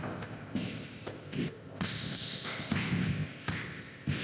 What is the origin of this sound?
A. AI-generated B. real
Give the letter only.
A